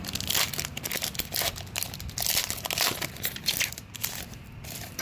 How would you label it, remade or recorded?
recorded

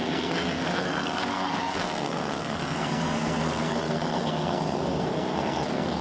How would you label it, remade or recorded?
remade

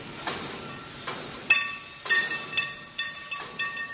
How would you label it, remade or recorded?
recorded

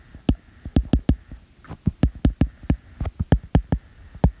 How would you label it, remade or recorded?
recorded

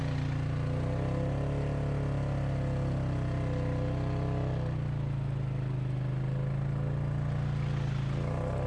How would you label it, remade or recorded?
recorded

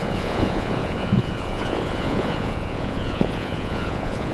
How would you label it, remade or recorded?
remade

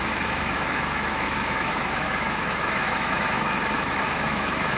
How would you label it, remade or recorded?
remade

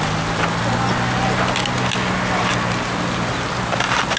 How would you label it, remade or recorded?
recorded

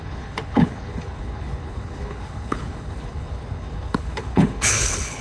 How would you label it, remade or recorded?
remade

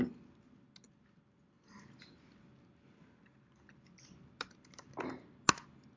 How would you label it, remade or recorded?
recorded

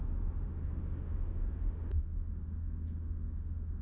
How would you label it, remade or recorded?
remade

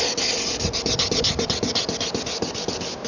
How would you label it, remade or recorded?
recorded